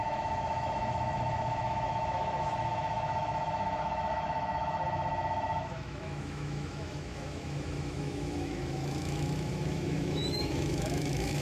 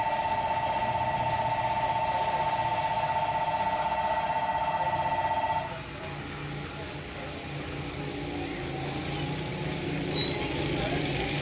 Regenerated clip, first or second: first